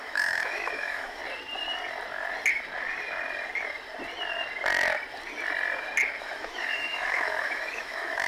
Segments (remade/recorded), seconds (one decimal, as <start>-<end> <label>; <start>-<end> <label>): 0.0-1.2 remade; 1.2-6.2 recorded; 6.2-8.3 remade